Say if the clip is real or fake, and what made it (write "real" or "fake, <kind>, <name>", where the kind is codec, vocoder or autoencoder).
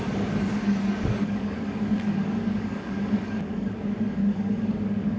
fake, codec, DAC